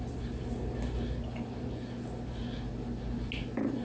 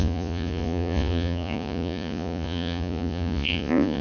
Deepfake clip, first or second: second